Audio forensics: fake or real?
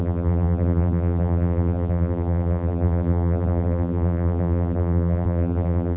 fake